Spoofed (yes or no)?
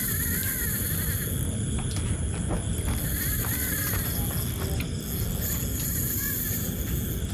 no